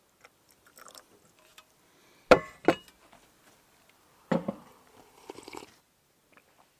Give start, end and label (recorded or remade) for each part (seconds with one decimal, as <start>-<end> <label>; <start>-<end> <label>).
0.0-6.8 recorded